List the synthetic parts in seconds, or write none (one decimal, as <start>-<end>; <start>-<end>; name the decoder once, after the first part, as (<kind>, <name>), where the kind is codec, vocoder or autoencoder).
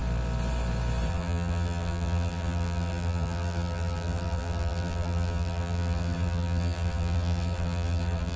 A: 1.1-8.4 (vocoder, BigVGAN v2)